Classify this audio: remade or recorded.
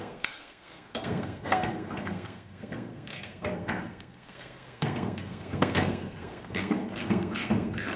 remade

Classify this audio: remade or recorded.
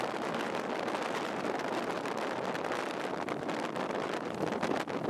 recorded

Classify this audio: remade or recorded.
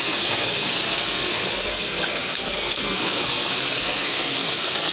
remade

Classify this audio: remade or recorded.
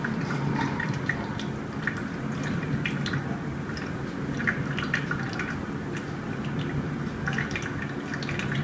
recorded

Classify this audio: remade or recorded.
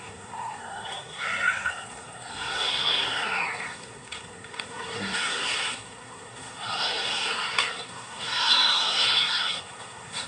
remade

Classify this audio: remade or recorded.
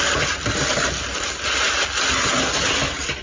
recorded